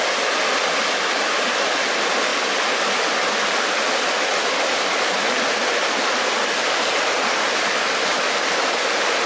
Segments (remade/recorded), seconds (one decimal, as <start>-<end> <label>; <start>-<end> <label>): 0.0-9.3 recorded